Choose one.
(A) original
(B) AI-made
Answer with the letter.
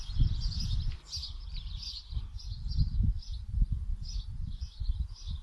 A